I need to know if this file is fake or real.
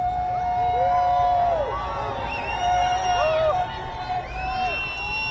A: real